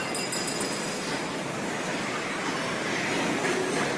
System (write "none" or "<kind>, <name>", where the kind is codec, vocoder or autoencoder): none